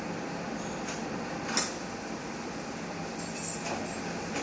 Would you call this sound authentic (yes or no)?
yes